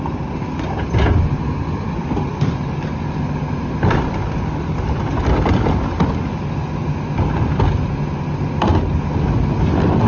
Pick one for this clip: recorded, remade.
recorded